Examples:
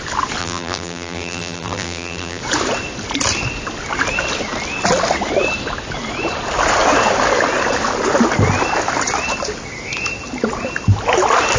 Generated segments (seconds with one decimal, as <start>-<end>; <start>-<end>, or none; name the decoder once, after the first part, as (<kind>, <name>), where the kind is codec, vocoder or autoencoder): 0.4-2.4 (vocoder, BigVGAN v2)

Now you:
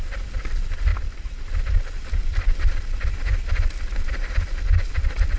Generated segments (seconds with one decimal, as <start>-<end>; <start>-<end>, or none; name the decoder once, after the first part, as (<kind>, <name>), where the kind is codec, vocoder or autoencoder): none

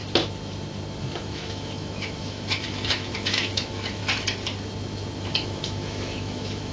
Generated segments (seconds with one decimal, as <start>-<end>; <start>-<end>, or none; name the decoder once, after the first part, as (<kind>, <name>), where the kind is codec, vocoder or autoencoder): 1.0-4.0 (autoencoder, DAC-VAE); 5.2-6.7

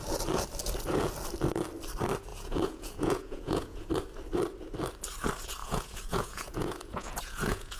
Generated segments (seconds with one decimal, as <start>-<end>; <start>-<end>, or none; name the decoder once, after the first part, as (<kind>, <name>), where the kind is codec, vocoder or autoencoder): 2.3-3.9 (vocoder, Vocos); 5.6-7.8

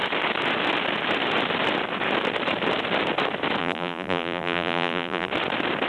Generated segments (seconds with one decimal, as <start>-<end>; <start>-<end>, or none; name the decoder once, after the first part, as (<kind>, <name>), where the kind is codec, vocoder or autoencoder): 3.6-5.3 (vocoder, BigVGAN v2)

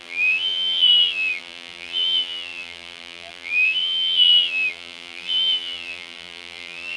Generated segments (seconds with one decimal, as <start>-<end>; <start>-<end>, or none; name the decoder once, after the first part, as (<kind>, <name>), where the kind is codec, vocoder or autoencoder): 0.0-7.0 (vocoder, BigVGAN v2)

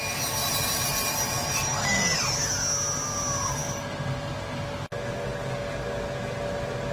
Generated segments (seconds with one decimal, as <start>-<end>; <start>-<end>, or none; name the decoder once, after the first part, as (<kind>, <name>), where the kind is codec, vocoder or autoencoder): 0.4-2.5 (vocoder, BigVGAN v2)

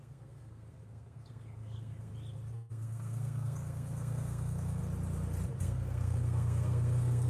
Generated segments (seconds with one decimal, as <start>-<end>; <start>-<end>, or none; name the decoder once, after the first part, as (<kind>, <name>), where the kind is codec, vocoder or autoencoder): 0.0-2.1 (codec, SNAC); 2.7-4.8; 5.6-7.3